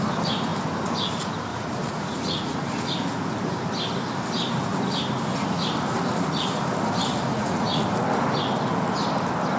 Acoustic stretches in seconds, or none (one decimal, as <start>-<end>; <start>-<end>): 0.0-1.5; 2.6-7.3; 7.8-9.6